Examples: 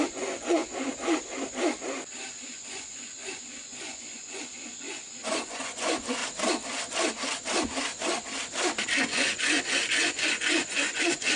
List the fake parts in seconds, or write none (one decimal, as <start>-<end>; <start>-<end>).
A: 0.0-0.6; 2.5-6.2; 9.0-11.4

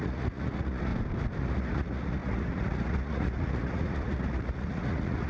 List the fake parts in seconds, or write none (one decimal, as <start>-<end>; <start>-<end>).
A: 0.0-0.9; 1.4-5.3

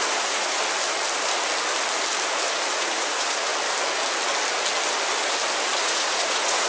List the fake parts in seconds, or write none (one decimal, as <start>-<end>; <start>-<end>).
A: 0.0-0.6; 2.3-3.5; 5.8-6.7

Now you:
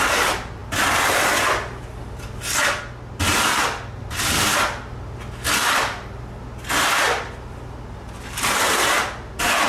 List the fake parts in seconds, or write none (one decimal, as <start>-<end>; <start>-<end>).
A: none

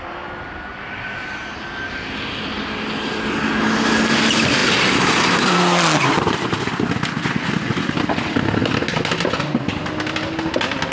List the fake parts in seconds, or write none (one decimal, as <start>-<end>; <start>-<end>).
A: none